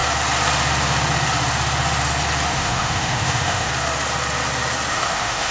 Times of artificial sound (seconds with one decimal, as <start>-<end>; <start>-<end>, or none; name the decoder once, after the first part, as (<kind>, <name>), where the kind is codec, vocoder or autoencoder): 2.5-3.7 (autoencoder, DAC-VAE); 4.9-5.5